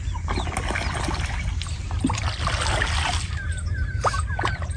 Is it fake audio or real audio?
real